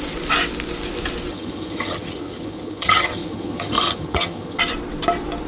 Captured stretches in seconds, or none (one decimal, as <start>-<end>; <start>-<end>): 0.0-1.3; 4.6-5.5